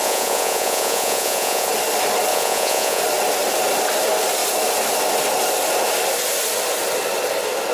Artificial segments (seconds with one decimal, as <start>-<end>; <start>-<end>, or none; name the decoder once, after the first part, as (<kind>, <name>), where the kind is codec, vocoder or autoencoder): 0.0-1.7 (vocoder, Vocos); 2.3-3.0